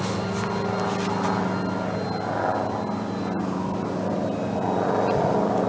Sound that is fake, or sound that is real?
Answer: real